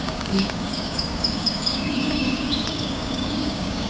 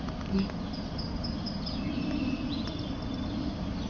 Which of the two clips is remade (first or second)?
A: first